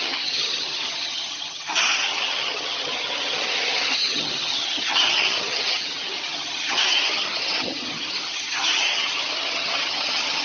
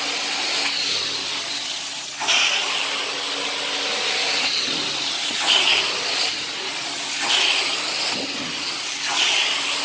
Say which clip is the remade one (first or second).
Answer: first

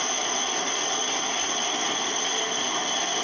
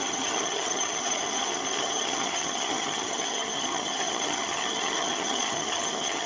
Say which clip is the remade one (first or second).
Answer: second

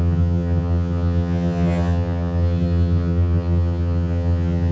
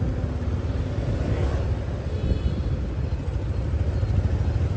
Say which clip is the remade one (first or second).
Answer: first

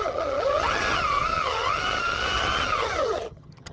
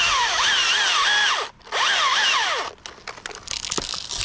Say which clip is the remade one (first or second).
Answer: first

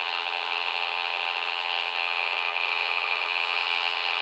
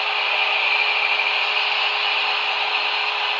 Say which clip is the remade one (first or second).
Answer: first